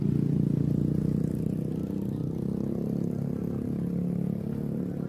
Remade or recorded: recorded